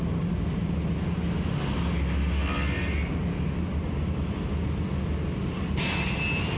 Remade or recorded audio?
recorded